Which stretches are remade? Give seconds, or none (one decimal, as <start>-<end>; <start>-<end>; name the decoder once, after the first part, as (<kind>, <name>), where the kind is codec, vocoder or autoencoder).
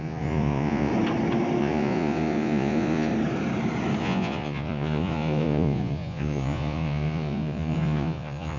0.0-0.9 (vocoder, Vocos); 1.6-3.1; 4.0-8.6